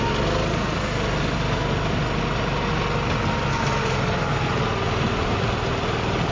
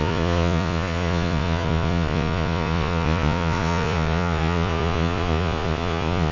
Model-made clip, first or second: second